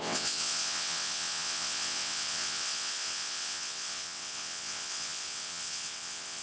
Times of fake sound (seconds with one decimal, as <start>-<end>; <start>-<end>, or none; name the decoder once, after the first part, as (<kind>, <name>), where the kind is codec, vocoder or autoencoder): 0.0-6.4 (vocoder, WaveNeXt)